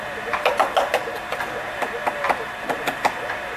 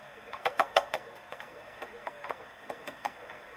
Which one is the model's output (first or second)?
second